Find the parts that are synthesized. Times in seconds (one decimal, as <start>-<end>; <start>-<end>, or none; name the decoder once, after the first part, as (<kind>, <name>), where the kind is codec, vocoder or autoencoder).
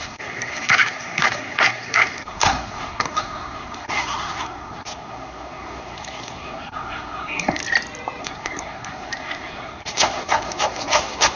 0.0-7.6 (codec, SNAC); 8.2-11.4